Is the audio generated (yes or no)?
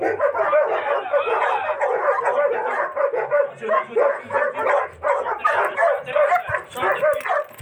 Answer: no